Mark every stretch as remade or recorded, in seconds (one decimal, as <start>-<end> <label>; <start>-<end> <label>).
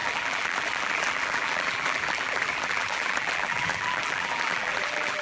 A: 0.0-5.2 remade